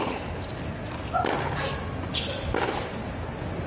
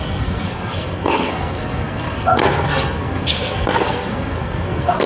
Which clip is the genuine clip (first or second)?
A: first